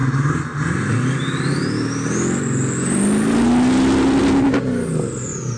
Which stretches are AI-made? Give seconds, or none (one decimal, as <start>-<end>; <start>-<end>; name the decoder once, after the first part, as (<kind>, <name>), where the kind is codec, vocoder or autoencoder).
none